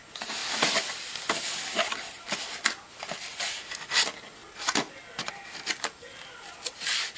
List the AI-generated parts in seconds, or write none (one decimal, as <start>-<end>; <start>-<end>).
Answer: none